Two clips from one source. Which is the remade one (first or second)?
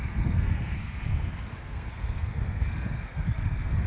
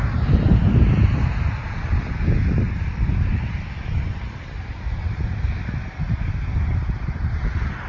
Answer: first